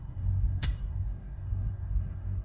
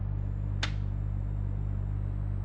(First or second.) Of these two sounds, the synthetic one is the first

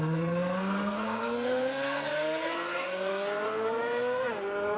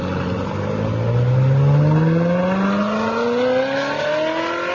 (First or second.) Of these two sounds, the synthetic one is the first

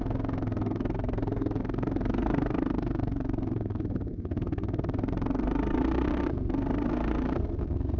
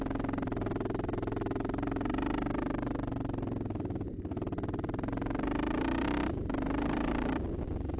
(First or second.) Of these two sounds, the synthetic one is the first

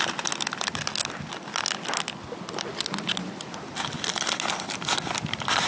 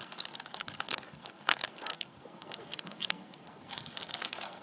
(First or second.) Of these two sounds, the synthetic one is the second